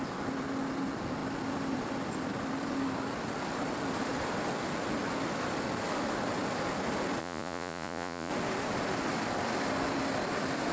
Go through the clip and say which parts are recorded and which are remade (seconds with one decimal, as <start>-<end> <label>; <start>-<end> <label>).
0.0-7.2 recorded; 7.2-8.3 remade; 8.3-10.7 recorded